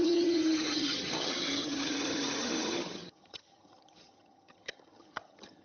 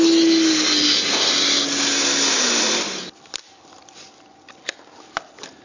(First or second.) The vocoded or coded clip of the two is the first